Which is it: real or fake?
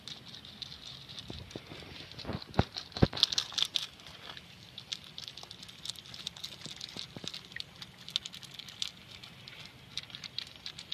real